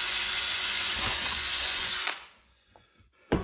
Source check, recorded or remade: remade